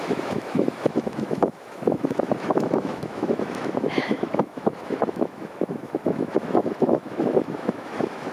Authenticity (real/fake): fake